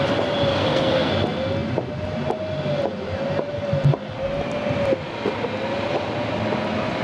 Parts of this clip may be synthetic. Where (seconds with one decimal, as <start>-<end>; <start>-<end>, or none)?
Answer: 0.5-1.1